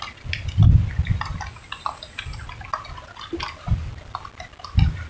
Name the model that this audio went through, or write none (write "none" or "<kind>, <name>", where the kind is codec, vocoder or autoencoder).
none